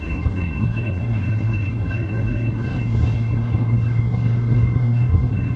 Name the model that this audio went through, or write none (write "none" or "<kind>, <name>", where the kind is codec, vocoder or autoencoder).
codec, SNAC